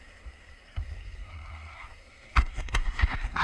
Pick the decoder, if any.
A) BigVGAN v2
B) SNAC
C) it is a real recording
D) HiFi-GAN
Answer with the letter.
B